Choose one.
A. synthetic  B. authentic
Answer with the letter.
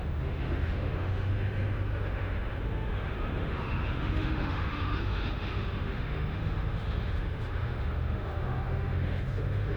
A